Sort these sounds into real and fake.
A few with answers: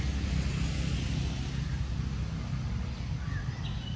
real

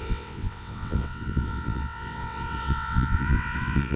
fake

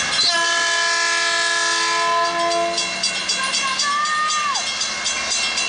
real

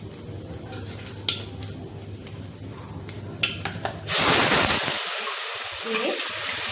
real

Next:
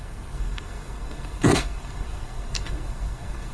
fake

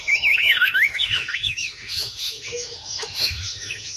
fake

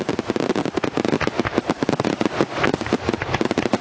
real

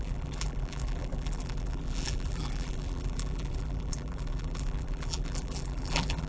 fake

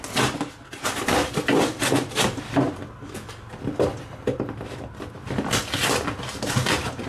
real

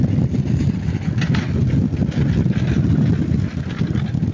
real